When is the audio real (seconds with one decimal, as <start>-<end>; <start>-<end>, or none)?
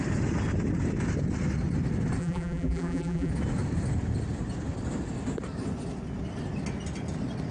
0.0-2.2; 3.3-7.5